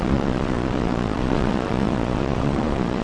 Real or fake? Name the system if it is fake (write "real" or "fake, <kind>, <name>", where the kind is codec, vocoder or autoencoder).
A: fake, vocoder, Vocos